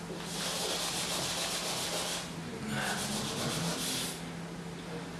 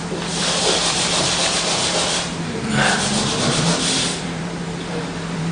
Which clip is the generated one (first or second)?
second